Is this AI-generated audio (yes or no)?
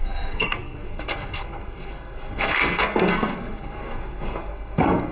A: yes